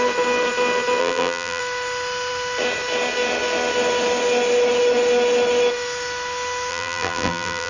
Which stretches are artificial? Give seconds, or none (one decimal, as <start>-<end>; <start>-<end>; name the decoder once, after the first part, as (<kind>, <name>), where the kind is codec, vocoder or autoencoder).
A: 1.0-1.6 (vocoder, BigVGAN v2); 6.7-7.7